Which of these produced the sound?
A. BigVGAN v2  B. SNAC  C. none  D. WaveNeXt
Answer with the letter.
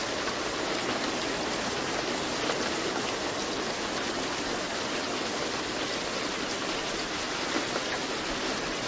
C